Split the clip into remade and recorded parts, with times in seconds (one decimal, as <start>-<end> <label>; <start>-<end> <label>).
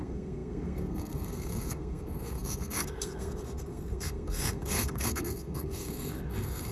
0.0-6.7 remade